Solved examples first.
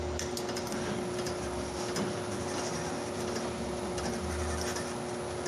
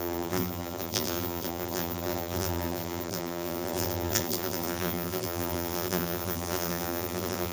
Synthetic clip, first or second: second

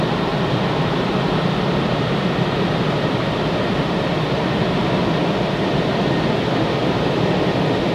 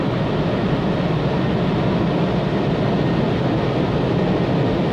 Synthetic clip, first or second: first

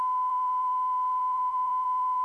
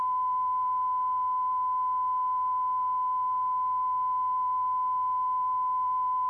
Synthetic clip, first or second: first